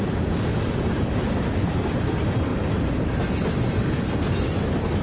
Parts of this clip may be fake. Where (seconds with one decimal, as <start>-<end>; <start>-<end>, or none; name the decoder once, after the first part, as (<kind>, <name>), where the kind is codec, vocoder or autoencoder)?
none